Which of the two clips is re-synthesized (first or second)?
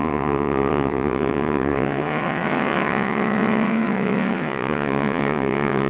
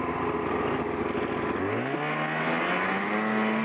first